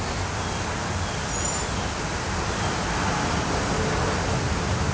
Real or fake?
real